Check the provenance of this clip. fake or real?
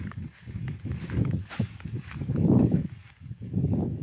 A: fake